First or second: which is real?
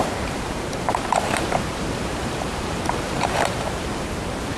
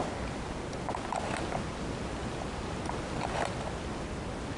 second